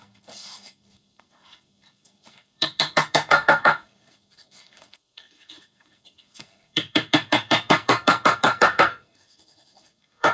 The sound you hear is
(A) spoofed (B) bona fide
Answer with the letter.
A